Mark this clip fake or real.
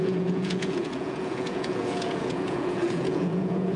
fake